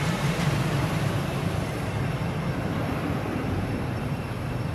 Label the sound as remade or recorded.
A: remade